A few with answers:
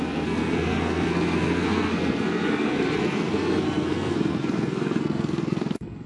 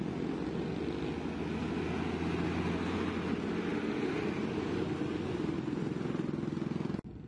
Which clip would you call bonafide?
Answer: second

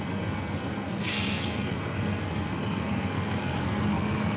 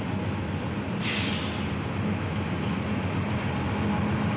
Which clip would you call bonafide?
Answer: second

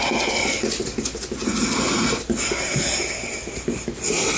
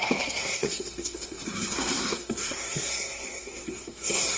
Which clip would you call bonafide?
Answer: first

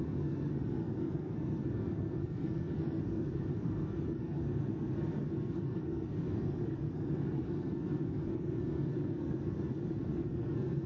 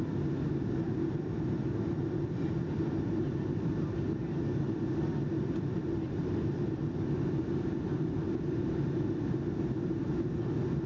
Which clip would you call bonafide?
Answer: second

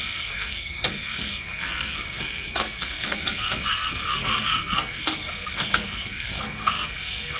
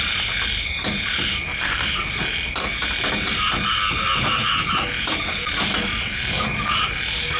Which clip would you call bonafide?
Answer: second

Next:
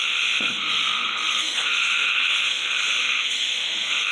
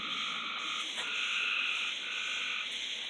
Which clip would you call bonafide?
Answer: second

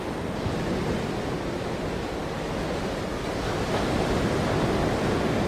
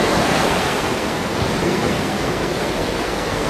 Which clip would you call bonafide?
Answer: first